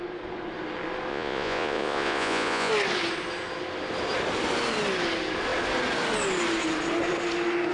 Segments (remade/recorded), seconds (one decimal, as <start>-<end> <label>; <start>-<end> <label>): 0.0-1.1 recorded; 1.1-2.7 remade; 2.7-7.7 recorded